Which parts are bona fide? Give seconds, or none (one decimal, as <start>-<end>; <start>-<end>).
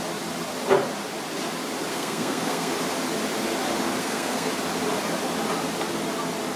0.0-1.9; 2.7-4.0; 4.5-6.6